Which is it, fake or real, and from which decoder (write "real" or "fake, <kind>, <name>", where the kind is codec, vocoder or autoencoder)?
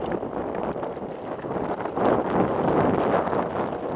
real